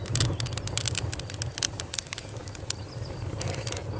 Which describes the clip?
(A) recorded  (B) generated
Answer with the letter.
A